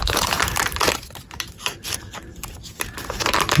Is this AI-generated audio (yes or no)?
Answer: yes